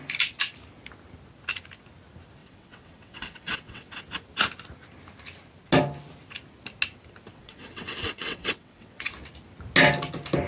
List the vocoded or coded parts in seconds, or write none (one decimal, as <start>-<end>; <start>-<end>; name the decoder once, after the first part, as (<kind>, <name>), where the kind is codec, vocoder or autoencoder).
2.4-4.0 (vocoder, WaveNeXt); 7.3-9.1